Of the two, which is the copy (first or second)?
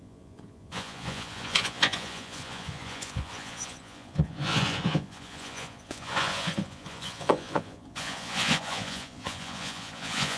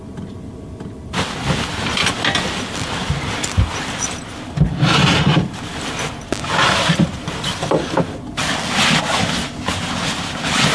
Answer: first